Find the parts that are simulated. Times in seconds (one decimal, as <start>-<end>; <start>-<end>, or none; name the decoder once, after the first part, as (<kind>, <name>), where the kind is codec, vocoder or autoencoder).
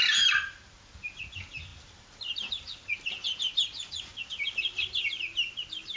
none